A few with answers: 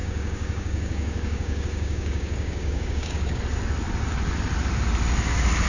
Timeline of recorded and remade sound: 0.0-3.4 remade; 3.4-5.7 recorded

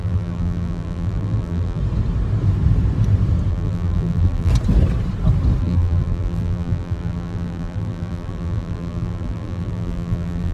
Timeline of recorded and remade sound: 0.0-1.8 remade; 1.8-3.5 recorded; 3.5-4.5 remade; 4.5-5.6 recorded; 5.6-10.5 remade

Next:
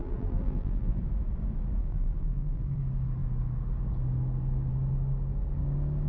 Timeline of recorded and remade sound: 0.0-1.0 remade; 1.0-1.8 recorded; 1.8-2.8 remade; 2.8-6.1 recorded